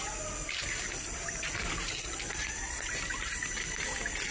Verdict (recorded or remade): recorded